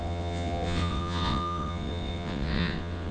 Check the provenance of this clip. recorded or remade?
remade